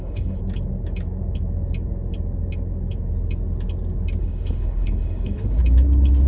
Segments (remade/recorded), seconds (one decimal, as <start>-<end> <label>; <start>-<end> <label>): 0.0-0.4 remade; 0.4-4.2 recorded; 4.2-5.6 remade; 5.6-6.3 recorded